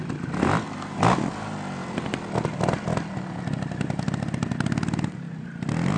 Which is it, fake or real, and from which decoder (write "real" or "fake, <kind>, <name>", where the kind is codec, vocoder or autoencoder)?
real